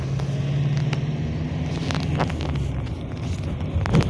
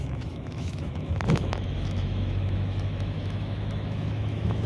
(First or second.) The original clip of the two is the first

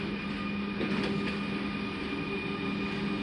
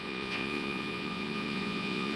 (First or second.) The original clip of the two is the first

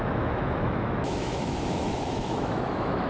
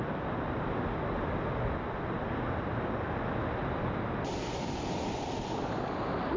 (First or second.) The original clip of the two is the second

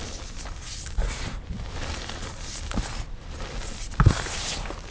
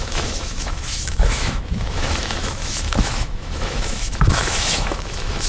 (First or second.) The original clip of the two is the first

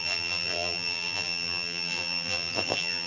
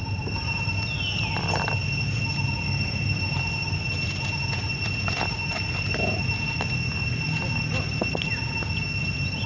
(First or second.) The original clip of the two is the second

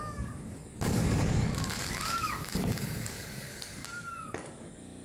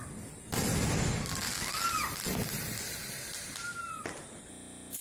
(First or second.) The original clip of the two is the second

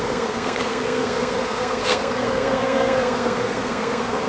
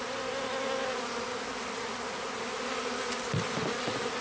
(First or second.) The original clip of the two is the second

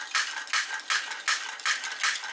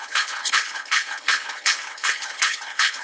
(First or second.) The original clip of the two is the first